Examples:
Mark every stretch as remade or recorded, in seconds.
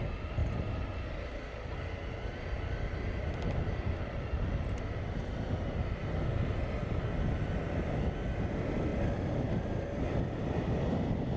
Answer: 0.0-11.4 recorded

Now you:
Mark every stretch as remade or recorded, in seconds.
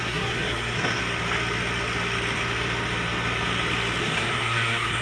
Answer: 0.0-1.0 remade; 1.0-4.0 recorded; 4.0-5.0 remade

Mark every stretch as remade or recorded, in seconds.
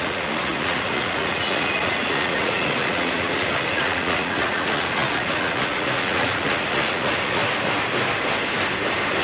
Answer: 0.0-7.4 remade; 7.4-9.2 recorded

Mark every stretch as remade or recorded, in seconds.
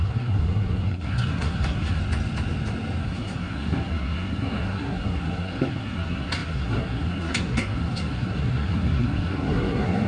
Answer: 0.0-2.0 remade; 2.0-3.0 recorded; 3.0-10.1 remade